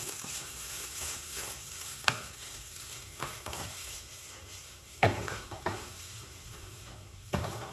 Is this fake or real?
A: fake